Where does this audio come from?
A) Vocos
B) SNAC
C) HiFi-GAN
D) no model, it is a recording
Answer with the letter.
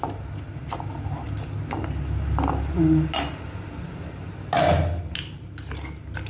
D